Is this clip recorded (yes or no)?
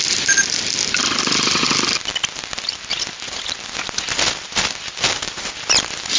yes